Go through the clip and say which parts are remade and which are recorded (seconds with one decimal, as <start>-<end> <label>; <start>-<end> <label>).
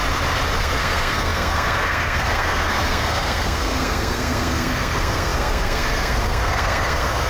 0.0-0.6 recorded; 0.6-7.3 remade